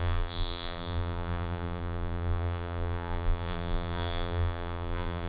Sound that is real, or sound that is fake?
fake